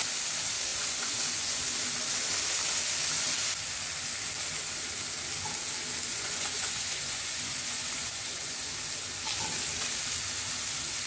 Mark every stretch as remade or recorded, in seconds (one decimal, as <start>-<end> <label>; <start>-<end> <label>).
0.0-0.7 recorded; 0.7-1.6 remade; 1.6-6.1 recorded; 6.1-8.7 remade; 8.7-11.1 recorded